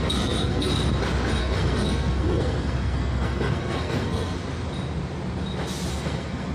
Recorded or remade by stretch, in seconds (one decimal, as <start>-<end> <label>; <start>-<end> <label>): 0.0-0.7 remade; 0.7-1.4 recorded; 1.4-4.4 remade; 4.4-5.9 recorded; 5.9-6.5 remade